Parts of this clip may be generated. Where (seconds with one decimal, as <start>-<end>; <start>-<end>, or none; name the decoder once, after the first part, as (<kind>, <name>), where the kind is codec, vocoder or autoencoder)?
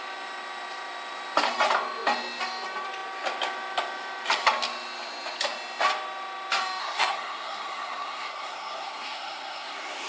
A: 6.8-10.1 (codec, SNAC)